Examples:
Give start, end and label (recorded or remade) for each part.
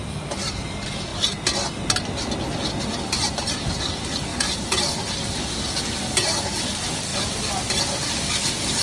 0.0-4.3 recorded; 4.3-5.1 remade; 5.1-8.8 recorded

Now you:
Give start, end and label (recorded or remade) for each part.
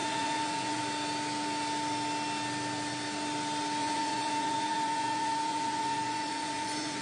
0.0-0.8 remade; 0.8-3.8 recorded; 3.8-7.0 remade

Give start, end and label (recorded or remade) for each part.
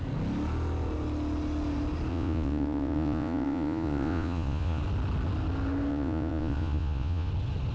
0.0-2.1 recorded; 2.1-4.8 remade; 4.8-5.9 recorded; 5.9-7.3 remade; 7.3-7.7 recorded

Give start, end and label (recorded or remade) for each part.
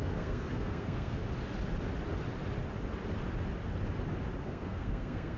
0.0-1.2 remade; 1.2-4.4 recorded; 4.4-5.4 remade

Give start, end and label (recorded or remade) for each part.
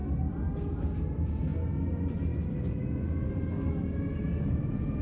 0.0-0.8 recorded; 0.8-1.5 remade; 1.5-4.5 recorded; 4.5-5.0 remade